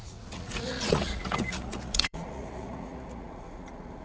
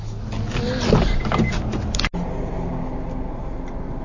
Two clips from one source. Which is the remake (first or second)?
first